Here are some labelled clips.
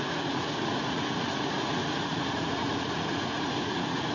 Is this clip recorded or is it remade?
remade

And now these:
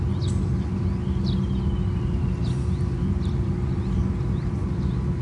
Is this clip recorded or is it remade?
recorded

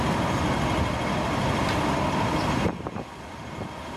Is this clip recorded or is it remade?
recorded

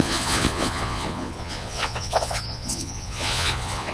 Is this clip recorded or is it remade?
remade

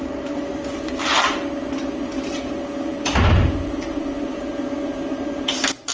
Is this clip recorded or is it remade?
recorded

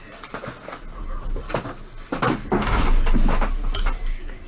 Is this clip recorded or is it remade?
recorded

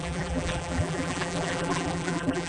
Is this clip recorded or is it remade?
remade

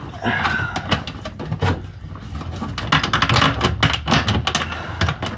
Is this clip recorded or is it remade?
recorded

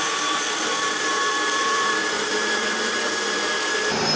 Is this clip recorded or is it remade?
remade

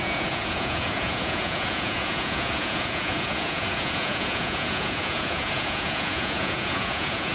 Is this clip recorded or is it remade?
remade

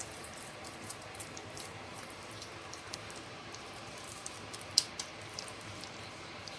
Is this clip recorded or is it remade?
remade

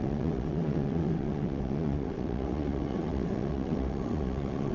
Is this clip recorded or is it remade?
remade